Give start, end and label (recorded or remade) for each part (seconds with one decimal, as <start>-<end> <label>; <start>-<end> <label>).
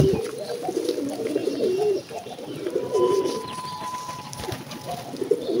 0.0-1.4 recorded; 1.4-4.8 remade; 4.8-5.6 recorded